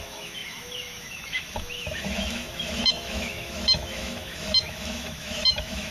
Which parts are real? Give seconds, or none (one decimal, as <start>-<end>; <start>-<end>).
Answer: none